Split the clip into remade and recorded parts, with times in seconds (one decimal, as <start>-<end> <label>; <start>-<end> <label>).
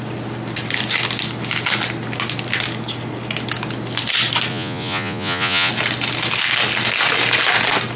0.0-4.5 recorded; 4.5-5.7 remade; 5.7-8.0 recorded